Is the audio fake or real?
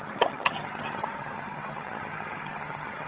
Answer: fake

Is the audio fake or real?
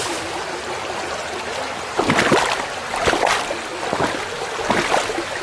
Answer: real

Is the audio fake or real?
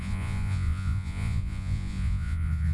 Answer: fake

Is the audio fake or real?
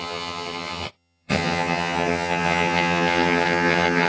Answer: fake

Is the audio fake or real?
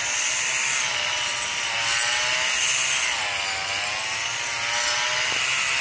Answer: real